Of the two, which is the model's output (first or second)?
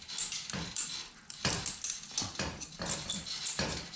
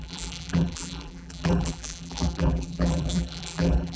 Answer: second